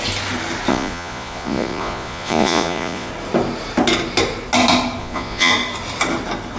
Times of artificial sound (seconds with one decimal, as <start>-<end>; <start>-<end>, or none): 0.7-3.1; 5.0-5.5